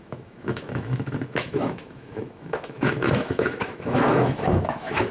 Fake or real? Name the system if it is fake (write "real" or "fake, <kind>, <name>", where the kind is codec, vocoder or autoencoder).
fake, autoencoder, DAC-VAE